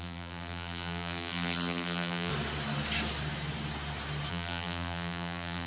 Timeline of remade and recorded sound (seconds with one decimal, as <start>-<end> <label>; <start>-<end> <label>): 0.0-2.3 remade; 2.3-4.3 recorded; 4.3-5.7 remade